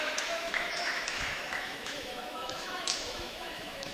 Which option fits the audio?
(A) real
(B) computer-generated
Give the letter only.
B